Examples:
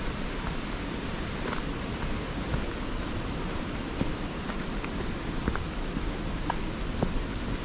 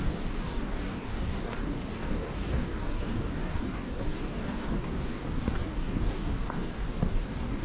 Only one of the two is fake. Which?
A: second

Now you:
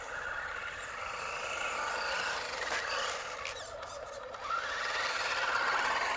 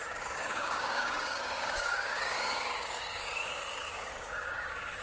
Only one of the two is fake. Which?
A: second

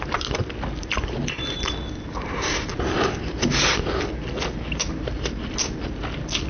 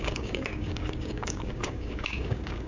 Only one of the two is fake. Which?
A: second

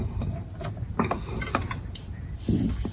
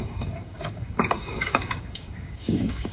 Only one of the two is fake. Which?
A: second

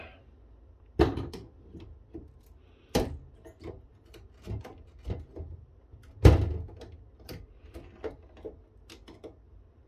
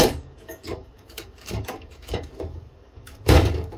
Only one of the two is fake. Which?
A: second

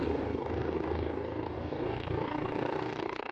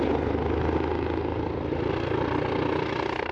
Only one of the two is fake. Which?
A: first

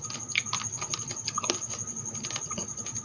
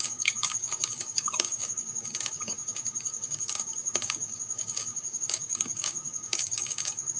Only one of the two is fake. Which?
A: second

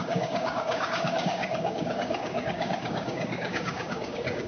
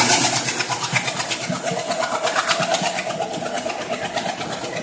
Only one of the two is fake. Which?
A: first